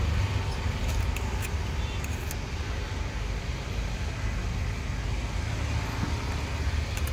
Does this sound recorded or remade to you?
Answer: recorded